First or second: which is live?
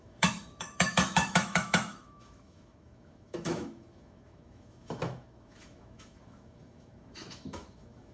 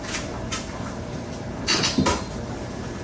second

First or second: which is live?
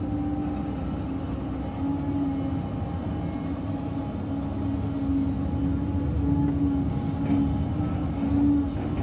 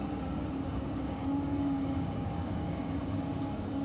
first